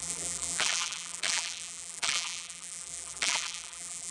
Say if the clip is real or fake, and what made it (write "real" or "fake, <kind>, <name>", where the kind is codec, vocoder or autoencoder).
fake, vocoder, BigVGAN v2